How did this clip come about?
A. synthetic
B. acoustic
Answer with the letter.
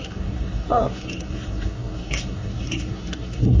A